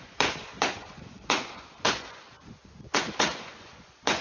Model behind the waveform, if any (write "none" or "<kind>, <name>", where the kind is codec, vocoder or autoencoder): vocoder, Vocos